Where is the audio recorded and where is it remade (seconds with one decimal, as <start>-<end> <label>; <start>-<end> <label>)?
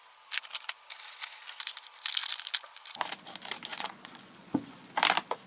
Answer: 0.0-3.7 recorded; 3.7-4.9 remade; 4.9-5.5 recorded